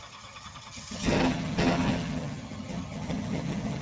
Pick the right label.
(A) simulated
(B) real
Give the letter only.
A